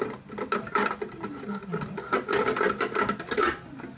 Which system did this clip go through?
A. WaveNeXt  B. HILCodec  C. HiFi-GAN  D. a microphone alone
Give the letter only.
D